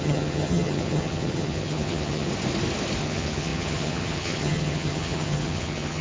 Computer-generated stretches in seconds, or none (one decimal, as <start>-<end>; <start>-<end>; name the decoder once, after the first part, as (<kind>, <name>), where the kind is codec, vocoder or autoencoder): 0.0-2.3 (vocoder, HiFi-GAN); 3.0-6.0